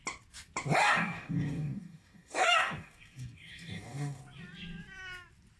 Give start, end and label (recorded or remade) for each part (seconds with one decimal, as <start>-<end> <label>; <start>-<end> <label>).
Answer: 0.0-0.8 recorded; 0.8-4.2 remade; 4.2-5.6 recorded